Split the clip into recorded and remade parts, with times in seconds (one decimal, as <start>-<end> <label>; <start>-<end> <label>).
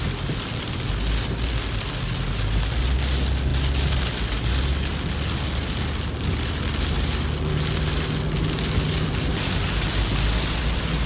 0.0-11.1 recorded